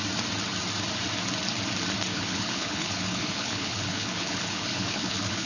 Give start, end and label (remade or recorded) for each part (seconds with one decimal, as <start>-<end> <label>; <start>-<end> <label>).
0.0-2.1 recorded; 2.1-5.5 remade